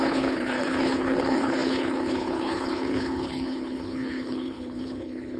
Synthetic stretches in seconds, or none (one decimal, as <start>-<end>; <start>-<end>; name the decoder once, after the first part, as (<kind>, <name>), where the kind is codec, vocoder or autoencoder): 0.0-5.4 (codec, HILCodec)